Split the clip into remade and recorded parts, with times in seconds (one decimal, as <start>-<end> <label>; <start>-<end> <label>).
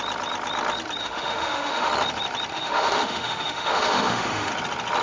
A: 0.0-1.0 recorded; 1.0-1.9 remade; 1.9-2.5 recorded; 2.5-4.5 remade; 4.5-5.0 recorded